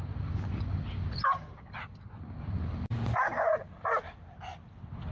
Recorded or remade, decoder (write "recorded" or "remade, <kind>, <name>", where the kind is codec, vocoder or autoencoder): recorded